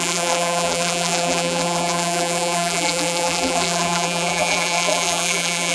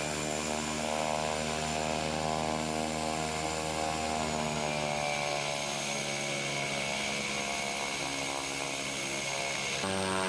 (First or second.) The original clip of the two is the second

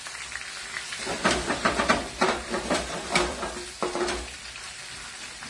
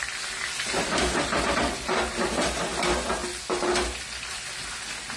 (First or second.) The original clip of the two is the second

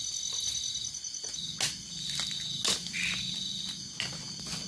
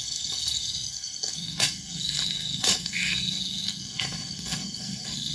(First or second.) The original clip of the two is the first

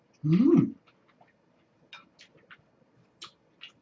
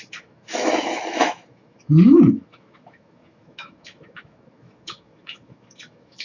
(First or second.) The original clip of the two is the first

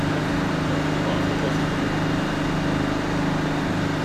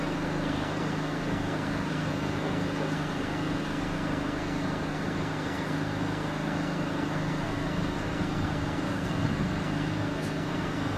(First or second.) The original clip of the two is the first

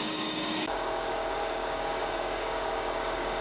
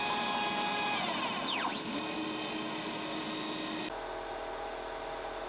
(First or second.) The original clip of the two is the second